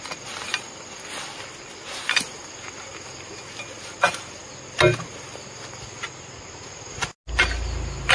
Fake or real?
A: real